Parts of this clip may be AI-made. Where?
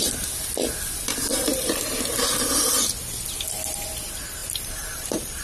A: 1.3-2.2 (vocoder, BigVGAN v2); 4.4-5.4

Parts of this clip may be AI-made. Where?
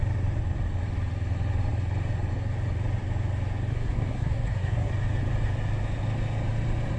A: 3.7-4.9 (codec, SNAC)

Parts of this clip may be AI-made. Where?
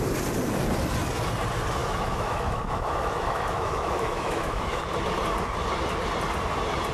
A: 1.8-4.8 (autoencoder, DAC-VAE)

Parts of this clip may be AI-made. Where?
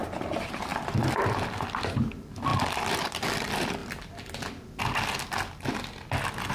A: 0.0-3.8 (vocoder, BigVGAN v2)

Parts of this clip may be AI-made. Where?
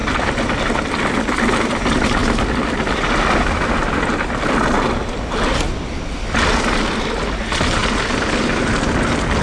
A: none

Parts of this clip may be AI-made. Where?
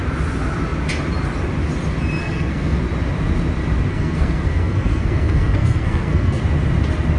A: 2.2-2.8 (codec, SNAC); 3.9-6.4